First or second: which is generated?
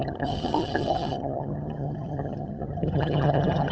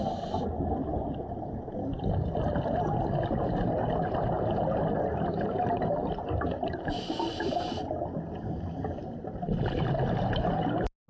first